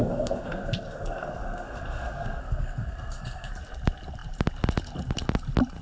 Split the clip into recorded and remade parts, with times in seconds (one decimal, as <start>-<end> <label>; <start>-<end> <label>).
0.0-3.5 remade; 3.5-5.8 recorded